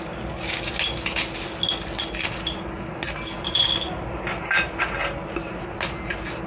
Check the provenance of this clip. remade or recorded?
recorded